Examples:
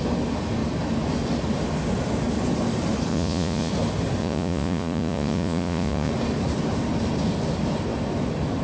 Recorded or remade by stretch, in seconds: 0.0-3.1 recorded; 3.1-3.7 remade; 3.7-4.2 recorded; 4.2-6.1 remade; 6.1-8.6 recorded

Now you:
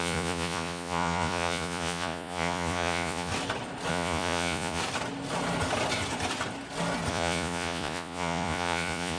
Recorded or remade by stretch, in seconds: 0.0-3.3 remade; 3.3-3.9 recorded; 3.9-4.8 remade; 4.8-7.1 recorded; 7.1-9.2 remade

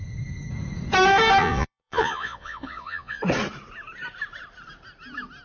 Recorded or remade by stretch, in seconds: 0.0-1.4 recorded; 1.4-3.2 remade; 3.2-5.4 recorded

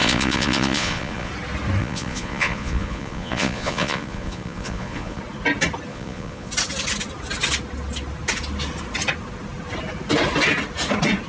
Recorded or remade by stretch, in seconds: 0.0-1.3 remade; 1.3-1.8 recorded; 1.8-5.2 remade; 5.2-5.9 recorded; 5.9-6.5 remade; 6.5-11.3 recorded

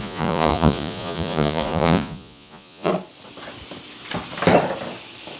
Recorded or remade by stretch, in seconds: 0.0-2.9 remade; 2.9-5.4 recorded

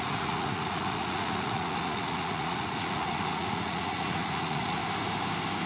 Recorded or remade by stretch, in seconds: 0.0-4.8 remade; 4.8-5.7 recorded

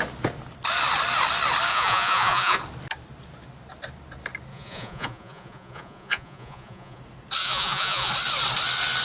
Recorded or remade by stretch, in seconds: 0.0-1.7 recorded; 1.7-2.6 remade; 2.6-4.5 recorded; 4.5-7.0 remade; 7.0-7.4 recorded; 7.4-8.1 remade; 8.1-9.0 recorded